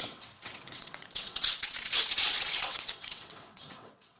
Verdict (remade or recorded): remade